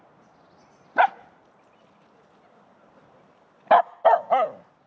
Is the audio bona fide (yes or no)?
yes